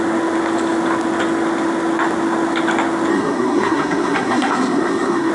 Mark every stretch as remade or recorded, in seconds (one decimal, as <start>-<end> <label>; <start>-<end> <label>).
0.0-3.1 recorded; 3.1-5.3 remade